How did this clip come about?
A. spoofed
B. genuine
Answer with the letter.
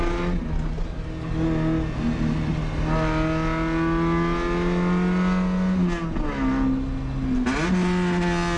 B